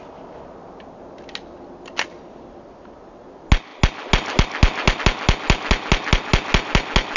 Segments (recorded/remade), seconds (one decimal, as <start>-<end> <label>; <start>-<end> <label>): 0.0-7.2 recorded